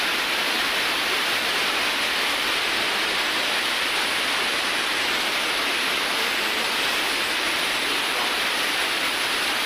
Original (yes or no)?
yes